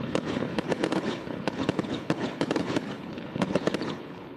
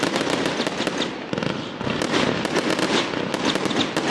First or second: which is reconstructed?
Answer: first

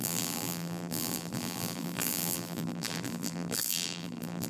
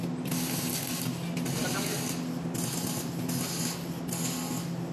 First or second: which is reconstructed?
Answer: first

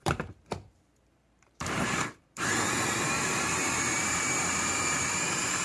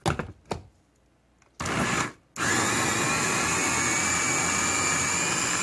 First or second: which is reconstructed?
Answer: first